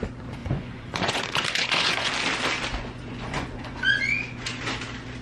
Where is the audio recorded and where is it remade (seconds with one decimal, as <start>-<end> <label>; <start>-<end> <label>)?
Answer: 0.0-0.4 recorded; 0.4-2.1 remade; 2.1-2.7 recorded; 2.7-4.6 remade; 4.6-5.2 recorded

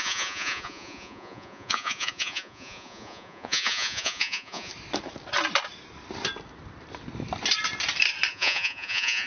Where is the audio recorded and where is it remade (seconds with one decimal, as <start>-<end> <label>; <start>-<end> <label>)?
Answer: 0.0-4.7 remade; 4.7-8.3 recorded; 8.3-9.3 remade

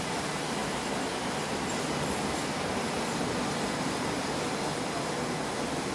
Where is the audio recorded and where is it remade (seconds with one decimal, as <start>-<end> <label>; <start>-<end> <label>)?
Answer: 0.0-5.9 recorded

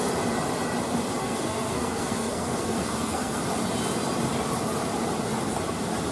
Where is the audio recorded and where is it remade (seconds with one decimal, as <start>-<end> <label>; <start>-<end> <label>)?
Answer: 0.0-1.2 recorded; 1.2-3.4 remade; 3.4-6.1 recorded

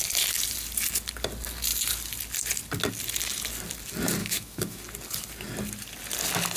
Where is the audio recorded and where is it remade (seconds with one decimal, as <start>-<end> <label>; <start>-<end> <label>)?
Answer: 0.0-4.2 recorded; 4.2-4.8 remade; 4.8-6.6 recorded

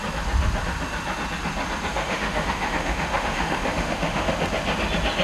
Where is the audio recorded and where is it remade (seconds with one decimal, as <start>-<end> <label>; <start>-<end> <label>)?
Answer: 0.0-1.9 recorded; 1.9-4.3 remade; 4.3-5.2 recorded

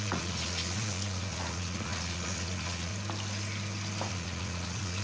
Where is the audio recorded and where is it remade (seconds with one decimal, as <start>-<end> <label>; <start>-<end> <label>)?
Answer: 0.0-2.9 remade; 2.9-4.1 recorded; 4.1-5.0 remade